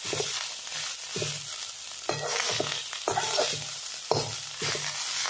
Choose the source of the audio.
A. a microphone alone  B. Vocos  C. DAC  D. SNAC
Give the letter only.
A